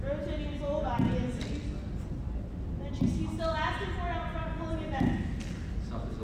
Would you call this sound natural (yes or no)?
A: yes